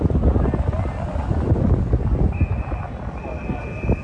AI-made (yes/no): no